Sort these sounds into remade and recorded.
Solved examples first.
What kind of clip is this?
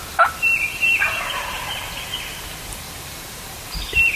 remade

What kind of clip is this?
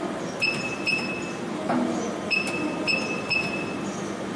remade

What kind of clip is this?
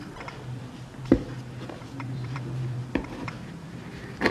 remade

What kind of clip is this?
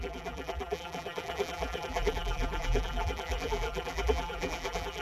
remade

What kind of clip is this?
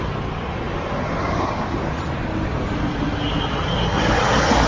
recorded